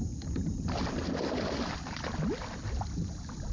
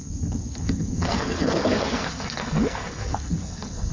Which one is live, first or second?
first